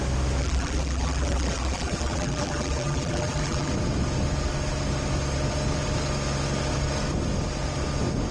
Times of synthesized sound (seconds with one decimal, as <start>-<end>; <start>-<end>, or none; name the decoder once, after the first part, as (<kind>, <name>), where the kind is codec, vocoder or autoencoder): 0.4-3.7 (vocoder, BigVGAN v2)